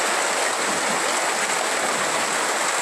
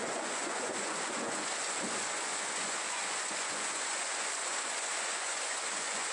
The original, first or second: first